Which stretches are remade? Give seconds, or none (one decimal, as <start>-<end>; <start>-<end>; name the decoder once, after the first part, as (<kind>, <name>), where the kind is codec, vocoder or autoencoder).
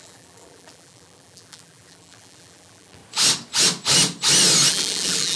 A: 0.0-3.0 (vocoder, BigVGAN v2); 4.7-5.4